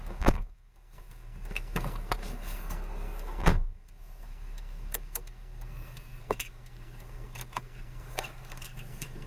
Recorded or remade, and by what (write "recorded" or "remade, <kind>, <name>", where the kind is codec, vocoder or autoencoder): remade, codec, SNAC